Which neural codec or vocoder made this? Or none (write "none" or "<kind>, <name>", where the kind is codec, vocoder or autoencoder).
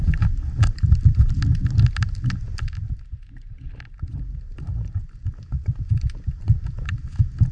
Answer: none